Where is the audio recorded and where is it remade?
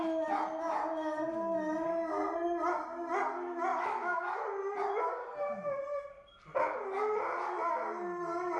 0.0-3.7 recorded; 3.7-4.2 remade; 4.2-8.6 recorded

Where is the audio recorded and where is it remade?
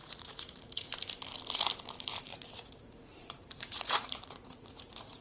0.0-0.9 remade; 0.9-2.3 recorded; 2.3-5.2 remade